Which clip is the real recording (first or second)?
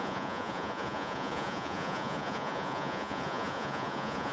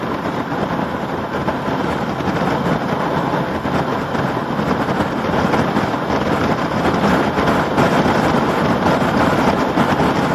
second